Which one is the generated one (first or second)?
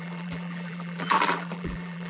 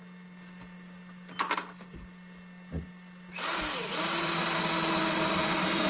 first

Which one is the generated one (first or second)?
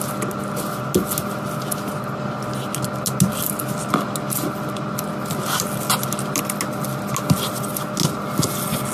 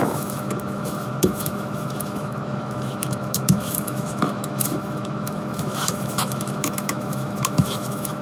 second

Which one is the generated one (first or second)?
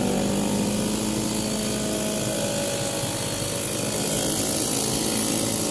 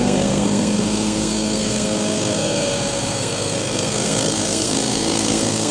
second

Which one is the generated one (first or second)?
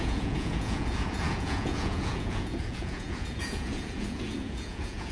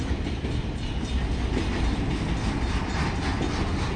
first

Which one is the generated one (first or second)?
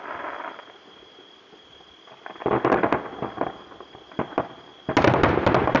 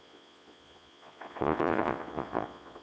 second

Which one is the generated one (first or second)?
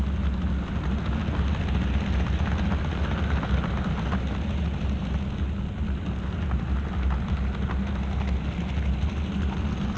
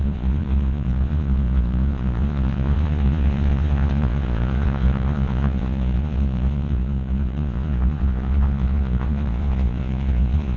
second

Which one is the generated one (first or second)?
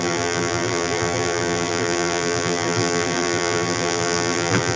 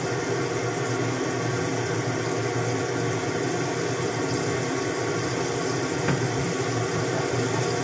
first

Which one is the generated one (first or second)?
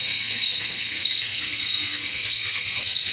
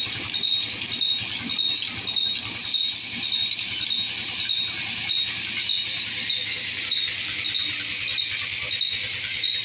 first